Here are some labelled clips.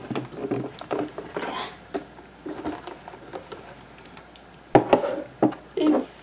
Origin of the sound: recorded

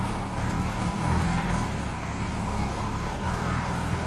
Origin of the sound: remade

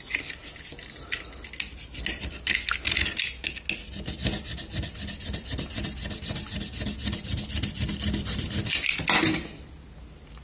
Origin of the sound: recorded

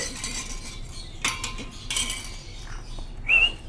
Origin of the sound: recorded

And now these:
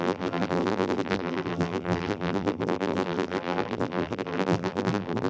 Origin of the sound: remade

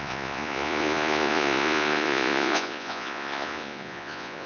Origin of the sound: remade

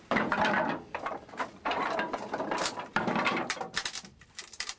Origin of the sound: remade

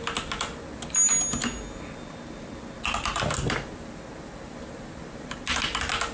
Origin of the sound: recorded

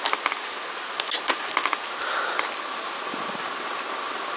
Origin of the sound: recorded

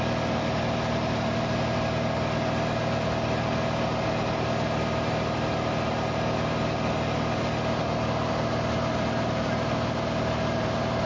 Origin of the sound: recorded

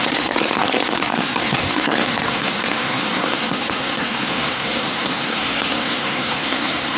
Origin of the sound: remade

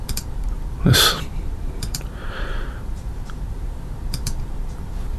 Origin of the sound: remade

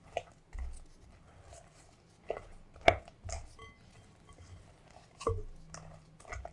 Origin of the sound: recorded